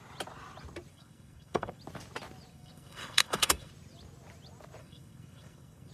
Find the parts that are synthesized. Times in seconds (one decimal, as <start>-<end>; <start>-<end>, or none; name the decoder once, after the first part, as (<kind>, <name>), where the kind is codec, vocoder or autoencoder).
0.9-1.8 (codec, SNAC); 2.5-3.7; 4.8-5.9